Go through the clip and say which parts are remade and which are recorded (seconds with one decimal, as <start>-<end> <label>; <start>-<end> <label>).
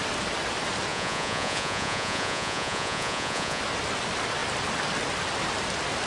0.0-0.9 recorded; 0.9-3.6 remade; 3.6-6.1 recorded